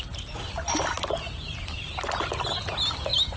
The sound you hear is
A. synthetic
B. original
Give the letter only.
B